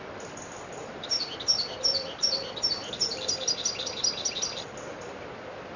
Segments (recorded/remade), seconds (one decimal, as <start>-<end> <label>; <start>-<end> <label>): 0.0-5.8 recorded